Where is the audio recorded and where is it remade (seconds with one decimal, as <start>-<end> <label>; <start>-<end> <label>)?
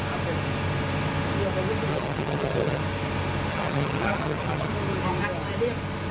0.0-1.9 recorded; 1.9-2.8 remade; 2.8-3.5 recorded; 3.5-4.7 remade; 4.7-6.1 recorded